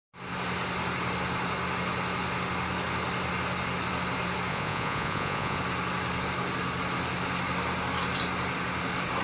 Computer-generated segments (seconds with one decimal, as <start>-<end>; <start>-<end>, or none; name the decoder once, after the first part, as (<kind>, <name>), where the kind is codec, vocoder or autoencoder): 4.5-5.6 (vocoder, Vocos)